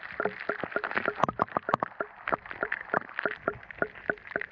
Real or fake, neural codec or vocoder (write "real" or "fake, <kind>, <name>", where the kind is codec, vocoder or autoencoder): fake, vocoder, BigVGAN v2